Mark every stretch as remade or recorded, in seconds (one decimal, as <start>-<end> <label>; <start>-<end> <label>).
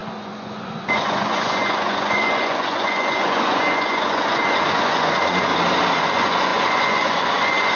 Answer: 0.0-5.5 remade; 5.5-6.0 recorded; 6.0-7.8 remade